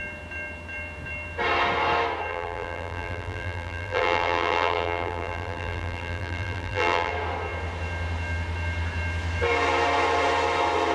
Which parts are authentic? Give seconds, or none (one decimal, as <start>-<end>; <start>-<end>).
0.0-2.3; 7.1-10.9